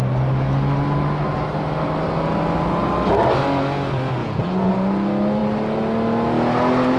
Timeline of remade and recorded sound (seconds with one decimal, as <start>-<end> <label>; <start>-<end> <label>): 0.0-4.2 recorded; 4.2-4.7 remade; 4.7-7.0 recorded